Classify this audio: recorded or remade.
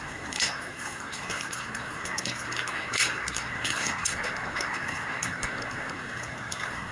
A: remade